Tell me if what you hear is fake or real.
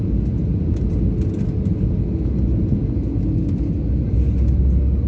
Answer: real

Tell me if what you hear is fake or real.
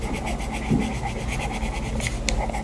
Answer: real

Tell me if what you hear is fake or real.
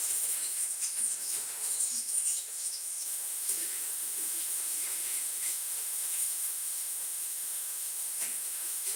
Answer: fake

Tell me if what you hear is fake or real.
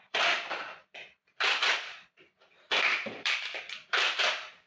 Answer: fake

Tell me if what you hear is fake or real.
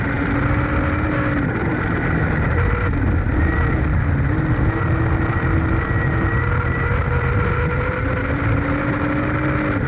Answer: real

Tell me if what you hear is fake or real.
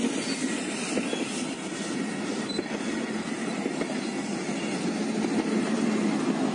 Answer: real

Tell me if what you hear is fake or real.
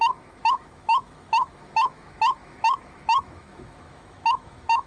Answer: fake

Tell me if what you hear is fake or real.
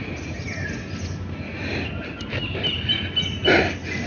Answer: real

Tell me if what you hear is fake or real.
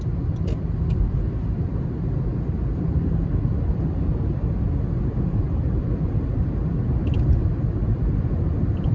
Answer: fake